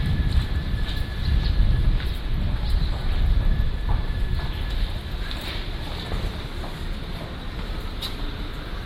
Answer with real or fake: real